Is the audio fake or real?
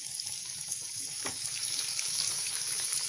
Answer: fake